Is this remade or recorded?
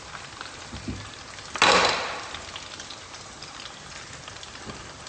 recorded